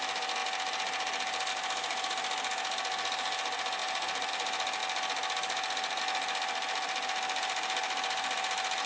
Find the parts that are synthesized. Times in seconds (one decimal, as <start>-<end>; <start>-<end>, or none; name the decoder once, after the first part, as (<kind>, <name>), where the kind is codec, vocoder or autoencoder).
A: 3.8-4.3 (vocoder, BigVGAN v2)